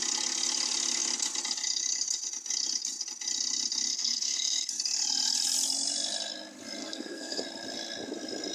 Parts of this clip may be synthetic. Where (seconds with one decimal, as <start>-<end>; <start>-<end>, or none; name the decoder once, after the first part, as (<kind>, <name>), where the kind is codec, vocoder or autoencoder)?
3.9-4.7 (codec, SNAC); 6.8-7.4

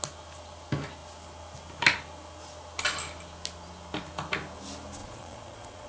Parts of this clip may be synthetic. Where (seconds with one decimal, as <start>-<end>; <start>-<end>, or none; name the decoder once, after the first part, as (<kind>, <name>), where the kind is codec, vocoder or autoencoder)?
5.0-5.9 (vocoder, Vocos)

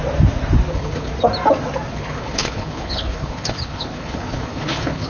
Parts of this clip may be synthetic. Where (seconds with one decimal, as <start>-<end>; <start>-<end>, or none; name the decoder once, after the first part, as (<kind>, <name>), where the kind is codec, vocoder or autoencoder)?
0.7-1.1 (codec, HILCodec); 1.9-5.1

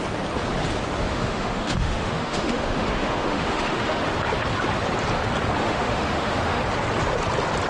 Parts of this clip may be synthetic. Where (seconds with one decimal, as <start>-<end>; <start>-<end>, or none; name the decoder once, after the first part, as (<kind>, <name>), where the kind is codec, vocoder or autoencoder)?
1.1-4.0 (autoencoder, DAC-VAE); 5.6-6.6